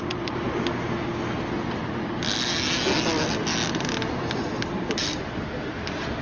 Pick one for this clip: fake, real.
real